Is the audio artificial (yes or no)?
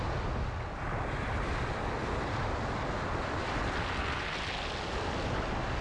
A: no